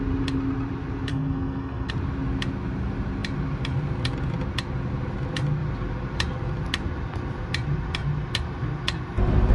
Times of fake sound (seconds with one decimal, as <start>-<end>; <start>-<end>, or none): 1.1-1.9